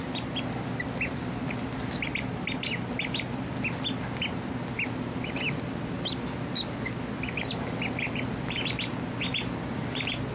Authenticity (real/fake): real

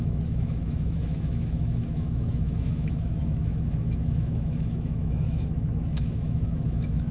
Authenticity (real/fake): fake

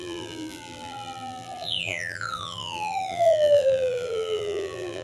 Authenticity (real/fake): fake